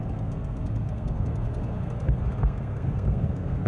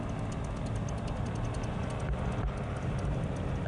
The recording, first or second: second